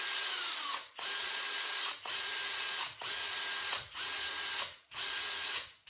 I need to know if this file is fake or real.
fake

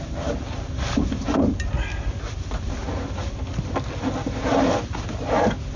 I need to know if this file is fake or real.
real